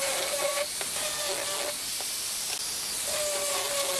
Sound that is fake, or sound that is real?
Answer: real